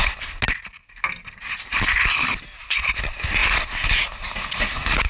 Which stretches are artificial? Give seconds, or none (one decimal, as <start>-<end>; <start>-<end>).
none